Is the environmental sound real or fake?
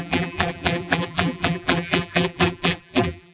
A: fake